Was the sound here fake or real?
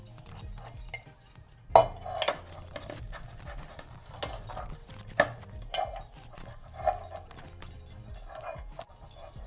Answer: real